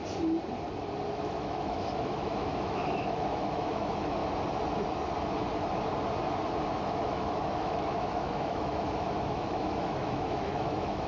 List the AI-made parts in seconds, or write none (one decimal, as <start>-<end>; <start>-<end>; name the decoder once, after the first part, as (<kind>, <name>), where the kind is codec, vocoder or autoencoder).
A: 1.1-4.2 (autoencoder, DAC-VAE); 6.8-11.1